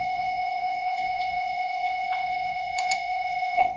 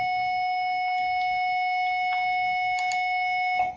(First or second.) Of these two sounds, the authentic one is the second